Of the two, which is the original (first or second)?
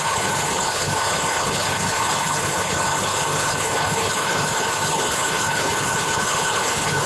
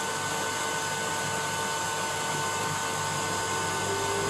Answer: second